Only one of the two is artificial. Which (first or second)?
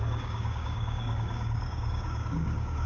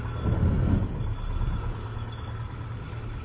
first